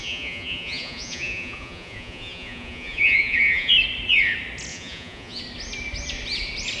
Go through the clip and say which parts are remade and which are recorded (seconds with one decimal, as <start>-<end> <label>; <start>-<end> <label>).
0.0-3.7 remade; 3.7-4.7 recorded; 4.7-5.4 remade; 5.4-6.8 recorded